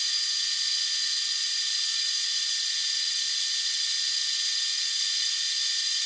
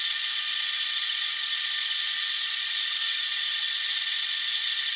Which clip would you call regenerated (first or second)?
second